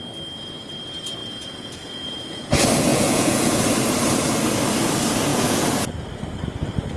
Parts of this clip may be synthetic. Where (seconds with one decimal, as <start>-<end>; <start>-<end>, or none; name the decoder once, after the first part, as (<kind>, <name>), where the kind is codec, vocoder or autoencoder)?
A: 1.2-2.5 (vocoder, Vocos); 2.9-3.6; 5.3-5.9